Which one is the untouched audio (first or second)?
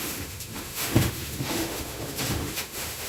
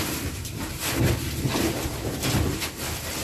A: second